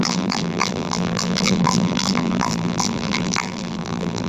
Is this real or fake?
fake